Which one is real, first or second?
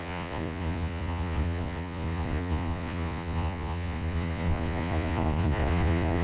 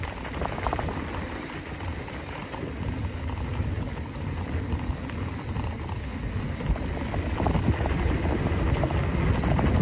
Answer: second